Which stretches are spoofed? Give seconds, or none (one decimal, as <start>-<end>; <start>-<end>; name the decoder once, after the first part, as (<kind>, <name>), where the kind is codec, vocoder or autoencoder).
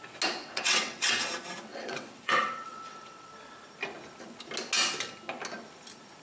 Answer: 0.4-1.2 (vocoder, WaveNeXt); 1.7-3.3